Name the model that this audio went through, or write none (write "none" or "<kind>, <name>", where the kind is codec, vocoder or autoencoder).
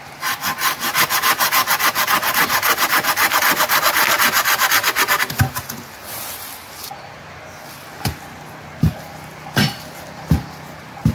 none